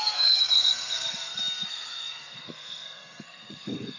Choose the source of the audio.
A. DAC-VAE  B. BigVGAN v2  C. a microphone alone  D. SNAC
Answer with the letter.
D